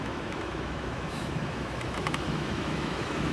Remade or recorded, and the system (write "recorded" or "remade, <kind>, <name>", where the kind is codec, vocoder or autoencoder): remade, autoencoder, DAC-VAE